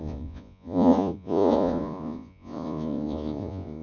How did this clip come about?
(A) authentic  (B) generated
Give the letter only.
B